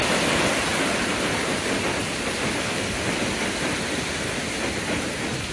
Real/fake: real